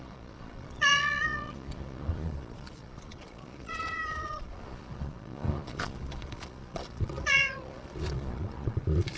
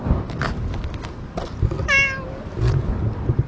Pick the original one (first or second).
second